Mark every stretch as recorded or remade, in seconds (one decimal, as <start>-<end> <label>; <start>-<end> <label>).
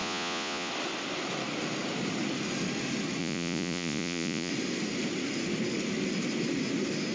0.0-0.7 remade; 0.7-3.2 recorded; 3.2-4.5 remade; 4.5-7.1 recorded